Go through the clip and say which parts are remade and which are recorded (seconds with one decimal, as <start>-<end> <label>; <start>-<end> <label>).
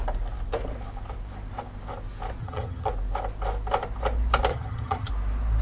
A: 0.0-2.4 recorded; 2.4-2.9 remade; 2.9-4.5 recorded; 4.5-5.1 remade; 5.1-5.6 recorded